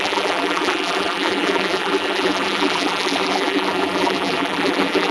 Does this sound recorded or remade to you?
remade